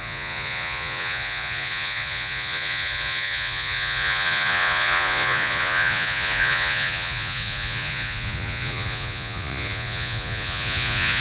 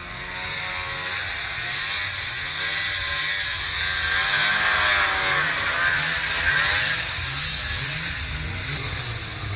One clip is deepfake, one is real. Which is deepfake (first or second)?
first